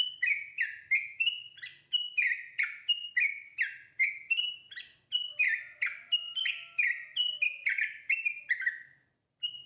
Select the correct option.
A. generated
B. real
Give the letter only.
B